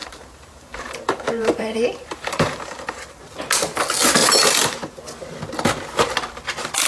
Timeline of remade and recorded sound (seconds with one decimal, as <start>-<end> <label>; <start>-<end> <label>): 0.0-3.2 remade; 3.2-4.2 recorded; 4.2-4.9 remade; 4.9-6.9 recorded

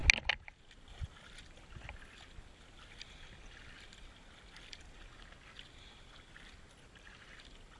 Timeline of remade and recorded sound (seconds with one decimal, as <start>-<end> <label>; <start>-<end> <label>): 0.0-7.8 recorded

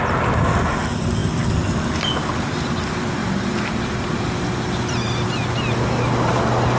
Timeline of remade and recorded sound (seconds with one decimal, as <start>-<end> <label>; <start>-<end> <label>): 0.0-3.2 recorded; 3.2-4.4 remade; 4.4-6.8 recorded

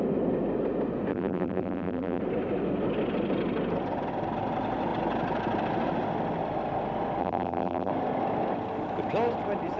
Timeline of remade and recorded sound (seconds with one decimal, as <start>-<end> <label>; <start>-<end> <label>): 0.0-1.1 recorded; 1.1-2.2 remade; 2.2-7.2 recorded; 7.2-7.9 remade; 7.9-9.8 recorded

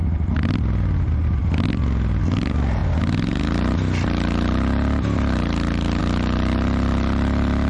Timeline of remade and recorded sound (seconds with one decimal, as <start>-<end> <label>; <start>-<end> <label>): 0.0-7.7 recorded

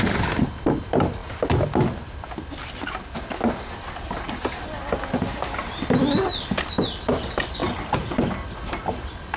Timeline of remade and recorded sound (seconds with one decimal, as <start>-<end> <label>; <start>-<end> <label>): 0.0-9.4 recorded